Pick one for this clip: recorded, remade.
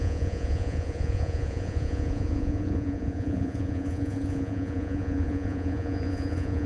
remade